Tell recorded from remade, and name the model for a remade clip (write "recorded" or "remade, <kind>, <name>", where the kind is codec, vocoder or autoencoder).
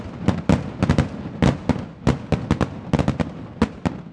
recorded